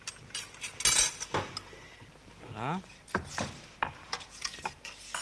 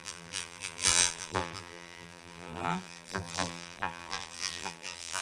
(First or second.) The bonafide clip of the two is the first